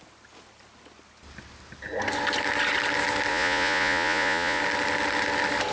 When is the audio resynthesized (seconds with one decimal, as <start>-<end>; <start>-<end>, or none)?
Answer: 3.3-4.6